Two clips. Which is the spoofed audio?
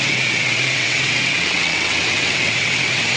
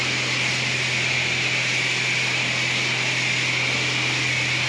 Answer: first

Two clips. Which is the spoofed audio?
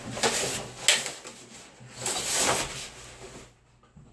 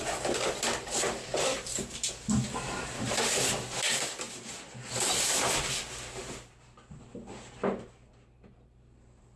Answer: second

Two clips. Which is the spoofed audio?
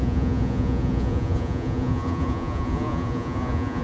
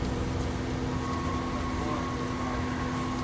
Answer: first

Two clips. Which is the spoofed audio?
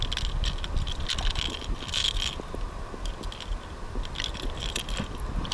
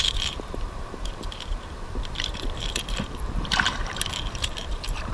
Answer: second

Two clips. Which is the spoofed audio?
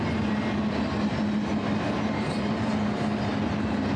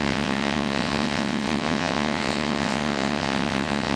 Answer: second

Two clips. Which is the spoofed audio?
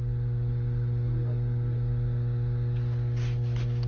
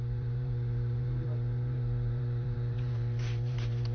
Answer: second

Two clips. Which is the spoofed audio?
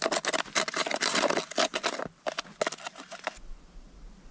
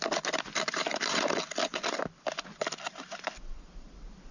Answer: second